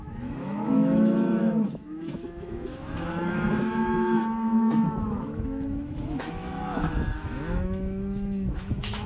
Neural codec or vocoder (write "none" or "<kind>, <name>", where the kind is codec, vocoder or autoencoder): autoencoder, DAC-VAE